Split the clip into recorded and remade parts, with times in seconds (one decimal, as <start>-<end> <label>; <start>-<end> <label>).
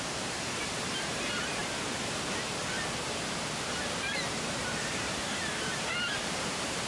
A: 0.0-1.6 remade; 1.6-3.7 recorded; 3.7-6.9 remade